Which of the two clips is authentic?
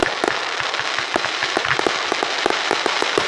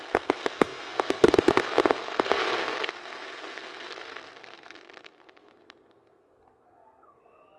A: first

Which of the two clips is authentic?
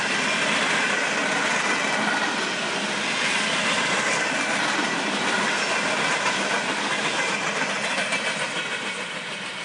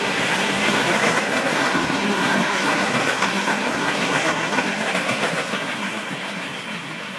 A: first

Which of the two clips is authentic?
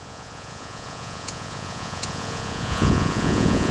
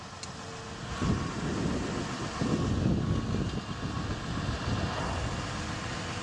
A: second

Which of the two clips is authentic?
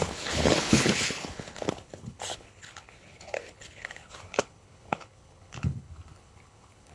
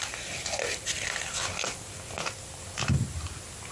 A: second